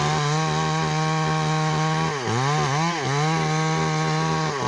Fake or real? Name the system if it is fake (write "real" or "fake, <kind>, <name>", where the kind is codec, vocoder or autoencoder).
real